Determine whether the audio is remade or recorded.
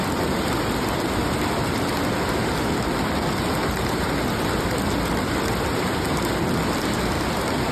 recorded